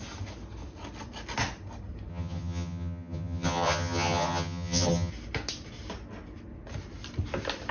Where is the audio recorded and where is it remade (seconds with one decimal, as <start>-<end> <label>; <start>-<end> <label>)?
0.0-2.1 recorded; 2.1-5.1 remade; 5.1-7.7 recorded